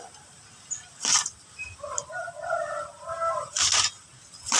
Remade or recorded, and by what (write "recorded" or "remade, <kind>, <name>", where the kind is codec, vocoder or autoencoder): recorded